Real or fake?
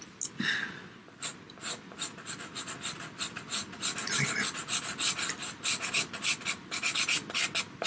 real